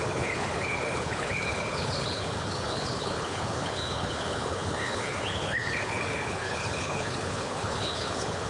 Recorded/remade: remade